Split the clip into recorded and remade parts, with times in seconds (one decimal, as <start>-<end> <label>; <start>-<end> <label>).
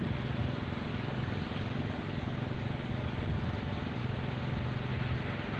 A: 0.0-0.9 recorded; 0.9-3.3 remade; 3.3-5.6 recorded